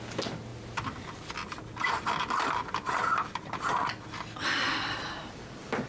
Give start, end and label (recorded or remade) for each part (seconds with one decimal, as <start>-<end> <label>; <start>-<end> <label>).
0.0-5.9 recorded